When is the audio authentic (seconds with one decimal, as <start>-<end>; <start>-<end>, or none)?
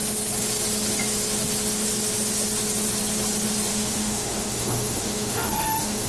0.0-3.7